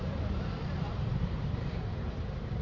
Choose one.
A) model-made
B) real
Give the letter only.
A